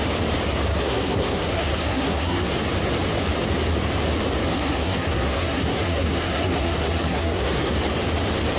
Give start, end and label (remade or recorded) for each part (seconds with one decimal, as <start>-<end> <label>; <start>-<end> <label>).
0.0-0.7 recorded; 0.7-2.5 remade; 2.5-4.5 recorded; 4.5-7.7 remade; 7.7-8.6 recorded